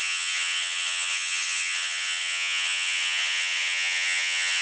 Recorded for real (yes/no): no